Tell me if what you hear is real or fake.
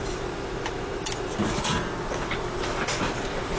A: real